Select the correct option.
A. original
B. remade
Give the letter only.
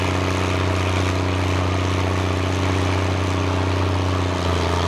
A